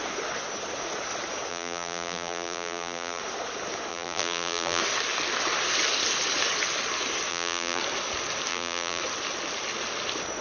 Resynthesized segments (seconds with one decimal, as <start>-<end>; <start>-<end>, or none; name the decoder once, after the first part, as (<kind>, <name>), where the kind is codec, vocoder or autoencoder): 1.5-3.2 (vocoder, BigVGAN v2); 3.9-4.8; 7.3-7.8; 8.5-9.0